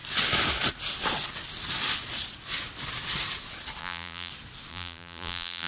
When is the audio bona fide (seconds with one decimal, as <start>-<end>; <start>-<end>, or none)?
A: 0.0-3.8; 4.3-4.7